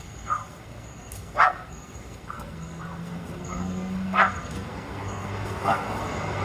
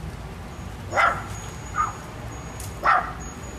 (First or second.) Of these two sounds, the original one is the second